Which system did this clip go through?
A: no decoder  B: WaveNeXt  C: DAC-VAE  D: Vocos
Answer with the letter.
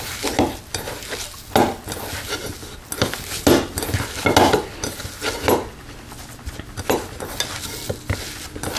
A